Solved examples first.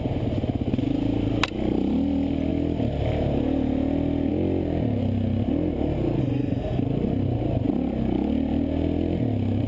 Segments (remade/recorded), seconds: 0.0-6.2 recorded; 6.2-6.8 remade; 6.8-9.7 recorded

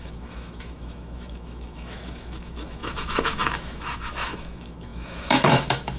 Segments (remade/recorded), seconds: 0.0-6.0 remade